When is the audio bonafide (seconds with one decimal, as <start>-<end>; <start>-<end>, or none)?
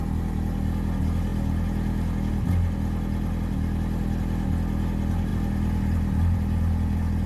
0.0-5.3